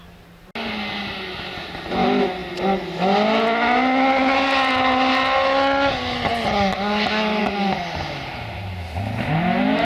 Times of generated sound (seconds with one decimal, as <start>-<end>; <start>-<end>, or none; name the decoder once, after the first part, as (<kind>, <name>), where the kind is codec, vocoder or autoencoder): none